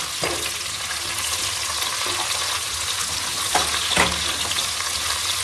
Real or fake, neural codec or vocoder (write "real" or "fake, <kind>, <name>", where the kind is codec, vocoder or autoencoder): real